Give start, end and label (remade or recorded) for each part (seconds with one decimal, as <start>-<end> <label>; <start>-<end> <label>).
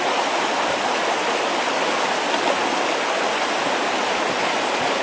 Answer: 0.0-5.0 recorded